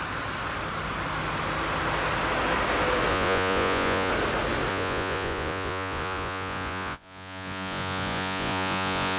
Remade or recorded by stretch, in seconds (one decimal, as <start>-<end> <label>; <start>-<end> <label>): 0.0-3.1 recorded; 3.1-4.1 remade; 4.1-4.7 recorded; 4.7-9.2 remade